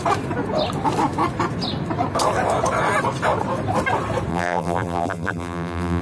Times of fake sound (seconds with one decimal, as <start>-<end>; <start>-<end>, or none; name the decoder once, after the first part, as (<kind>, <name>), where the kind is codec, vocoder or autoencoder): 4.3-6.0 (vocoder, BigVGAN v2)